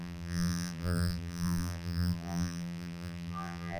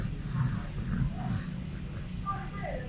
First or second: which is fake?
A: first